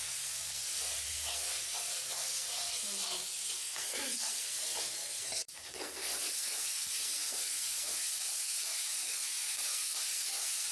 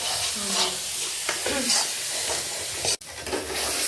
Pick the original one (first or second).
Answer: second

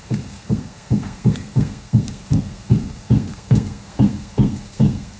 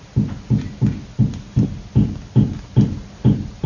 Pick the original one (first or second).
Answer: second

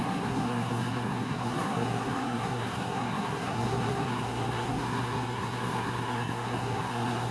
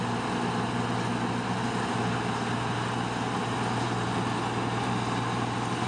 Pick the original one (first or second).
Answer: second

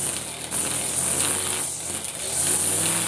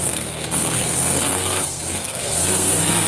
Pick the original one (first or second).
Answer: first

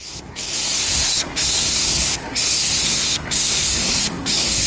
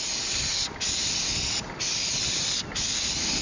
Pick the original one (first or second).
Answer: second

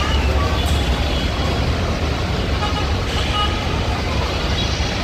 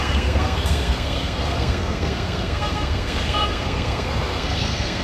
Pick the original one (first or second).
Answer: first